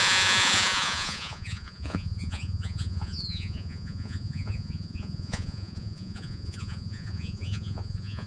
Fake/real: fake